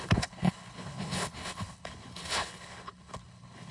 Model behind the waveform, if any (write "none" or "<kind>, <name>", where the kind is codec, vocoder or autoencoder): codec, HILCodec